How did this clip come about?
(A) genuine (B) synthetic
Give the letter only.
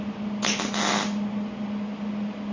A